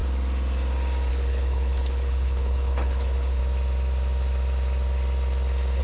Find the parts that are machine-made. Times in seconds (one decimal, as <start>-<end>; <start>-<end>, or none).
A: 1.1-3.4